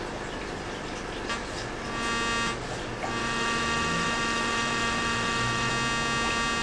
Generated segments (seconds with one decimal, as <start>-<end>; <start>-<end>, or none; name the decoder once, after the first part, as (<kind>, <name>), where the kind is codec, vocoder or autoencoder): 3.2-5.7 (autoencoder, DAC-VAE)